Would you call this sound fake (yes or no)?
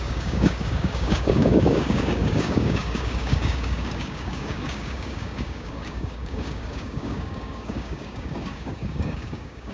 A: yes